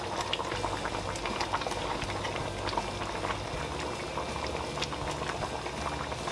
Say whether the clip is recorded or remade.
recorded